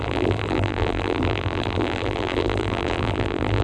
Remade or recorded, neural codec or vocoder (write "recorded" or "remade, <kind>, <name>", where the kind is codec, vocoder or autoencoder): remade, vocoder, BigVGAN v2